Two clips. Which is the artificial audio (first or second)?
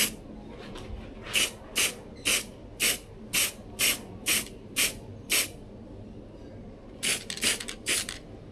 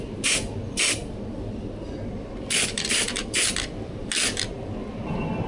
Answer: second